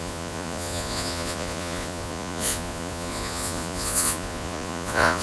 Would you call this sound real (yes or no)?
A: no